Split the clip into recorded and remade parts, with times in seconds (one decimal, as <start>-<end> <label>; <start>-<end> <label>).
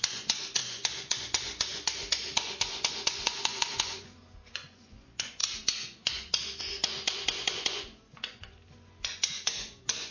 0.0-10.1 remade